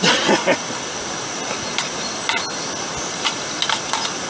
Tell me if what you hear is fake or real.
real